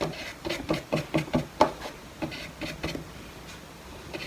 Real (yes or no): yes